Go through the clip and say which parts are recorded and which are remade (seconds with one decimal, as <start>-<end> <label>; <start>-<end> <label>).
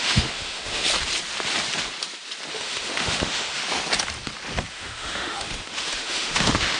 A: 0.0-0.8 remade; 0.8-2.5 recorded; 2.5-3.6 remade; 3.6-4.7 recorded; 4.7-6.8 remade